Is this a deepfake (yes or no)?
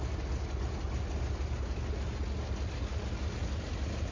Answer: no